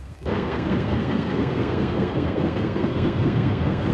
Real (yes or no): no